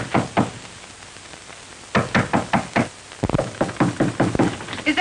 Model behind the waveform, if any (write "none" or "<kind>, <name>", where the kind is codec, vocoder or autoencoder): none